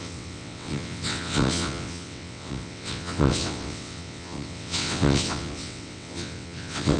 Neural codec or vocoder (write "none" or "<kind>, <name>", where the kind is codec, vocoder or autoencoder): vocoder, WaveNeXt